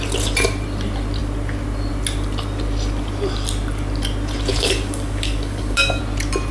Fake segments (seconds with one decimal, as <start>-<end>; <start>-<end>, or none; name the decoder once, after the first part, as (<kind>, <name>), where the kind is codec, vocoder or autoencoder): 4.5-6.0 (codec, DAC)